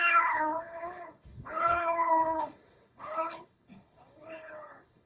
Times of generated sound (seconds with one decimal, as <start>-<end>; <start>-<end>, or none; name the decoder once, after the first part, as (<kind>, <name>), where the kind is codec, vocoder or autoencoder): 0.0-5.1 (codec, HILCodec)

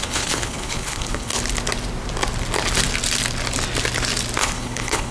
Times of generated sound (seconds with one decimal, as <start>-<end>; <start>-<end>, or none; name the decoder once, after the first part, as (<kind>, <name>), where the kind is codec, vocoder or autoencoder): 0.0-1.3 (codec, HILCodec); 4.4-5.1

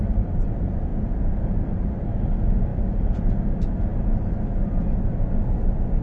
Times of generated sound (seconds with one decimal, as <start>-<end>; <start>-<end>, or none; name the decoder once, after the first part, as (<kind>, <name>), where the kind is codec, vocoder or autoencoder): none

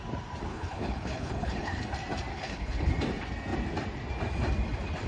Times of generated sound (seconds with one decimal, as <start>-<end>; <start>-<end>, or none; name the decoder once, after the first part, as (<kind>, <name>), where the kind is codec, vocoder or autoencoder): 0.5-1.8 (codec, HILCodec); 2.3-2.9

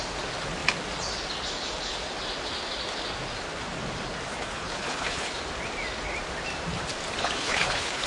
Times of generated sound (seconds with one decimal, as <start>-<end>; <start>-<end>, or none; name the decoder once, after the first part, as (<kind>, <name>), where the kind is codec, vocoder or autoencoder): 4.4-5.4 (codec, HILCodec); 7.2-8.1

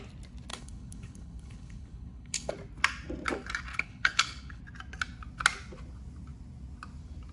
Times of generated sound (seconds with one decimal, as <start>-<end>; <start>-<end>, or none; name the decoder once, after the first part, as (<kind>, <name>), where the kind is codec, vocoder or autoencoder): 0.5-2.5 (codec, HILCodec); 3.7-4.6